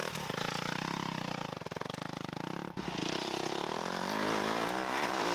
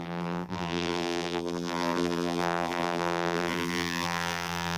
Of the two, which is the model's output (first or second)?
second